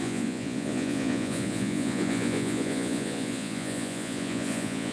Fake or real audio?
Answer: fake